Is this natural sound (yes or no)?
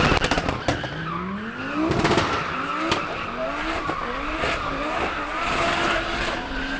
yes